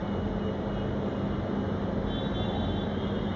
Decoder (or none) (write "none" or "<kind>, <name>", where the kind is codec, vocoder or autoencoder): none